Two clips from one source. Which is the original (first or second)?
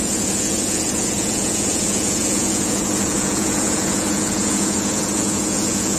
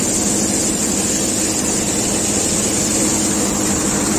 second